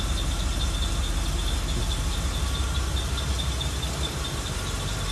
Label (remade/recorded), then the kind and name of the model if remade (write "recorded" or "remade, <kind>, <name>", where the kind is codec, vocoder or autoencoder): recorded